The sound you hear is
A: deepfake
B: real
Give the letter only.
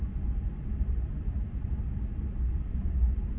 B